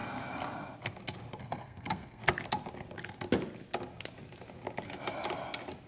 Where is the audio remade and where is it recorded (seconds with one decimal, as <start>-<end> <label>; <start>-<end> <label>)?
0.0-1.4 recorded; 1.4-2.2 remade; 2.2-5.9 recorded